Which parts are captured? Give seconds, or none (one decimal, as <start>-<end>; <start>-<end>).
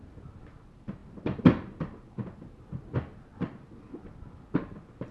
0.0-5.1